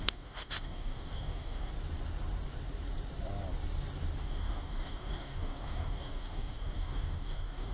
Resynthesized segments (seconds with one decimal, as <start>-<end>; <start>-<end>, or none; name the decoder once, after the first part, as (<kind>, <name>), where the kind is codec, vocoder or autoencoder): 0.0-1.7 (codec, DAC); 4.2-7.7